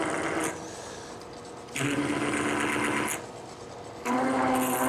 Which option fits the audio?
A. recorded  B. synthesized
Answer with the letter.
A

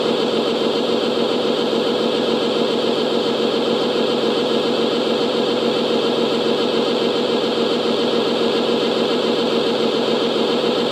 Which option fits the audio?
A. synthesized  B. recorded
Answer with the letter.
A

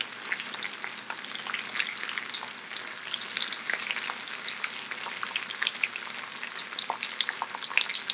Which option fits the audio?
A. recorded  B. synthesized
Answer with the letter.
A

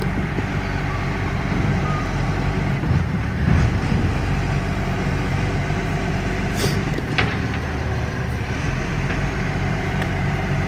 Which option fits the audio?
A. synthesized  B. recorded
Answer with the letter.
A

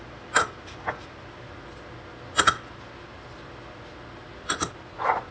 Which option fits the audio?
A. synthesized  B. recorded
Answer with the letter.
B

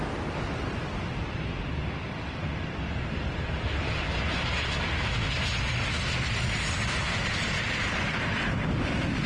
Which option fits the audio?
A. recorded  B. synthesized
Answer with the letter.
A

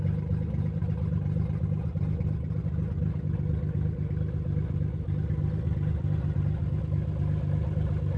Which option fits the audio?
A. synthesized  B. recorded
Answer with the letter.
B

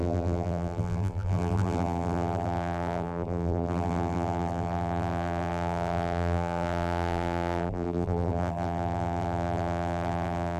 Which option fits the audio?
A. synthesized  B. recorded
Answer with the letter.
A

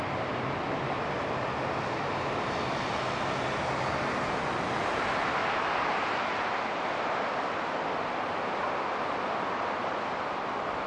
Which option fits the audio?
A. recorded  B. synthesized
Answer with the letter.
A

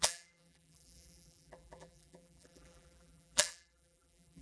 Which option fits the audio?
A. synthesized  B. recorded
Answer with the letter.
A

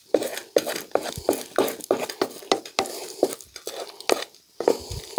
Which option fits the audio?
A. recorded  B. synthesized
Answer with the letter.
A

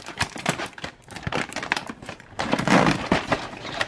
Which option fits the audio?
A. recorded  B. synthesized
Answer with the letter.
B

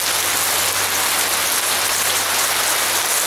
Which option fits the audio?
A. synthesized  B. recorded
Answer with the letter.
B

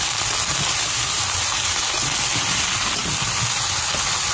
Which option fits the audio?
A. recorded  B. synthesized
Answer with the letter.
A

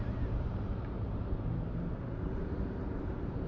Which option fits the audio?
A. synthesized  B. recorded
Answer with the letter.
A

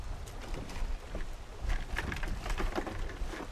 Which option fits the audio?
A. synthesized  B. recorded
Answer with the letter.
A